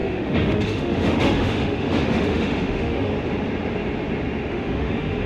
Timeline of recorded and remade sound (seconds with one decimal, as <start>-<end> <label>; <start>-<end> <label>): 0.0-3.1 remade; 3.1-4.5 recorded; 4.5-5.3 remade